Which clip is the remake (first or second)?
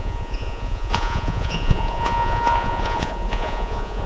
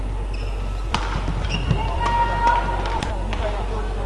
first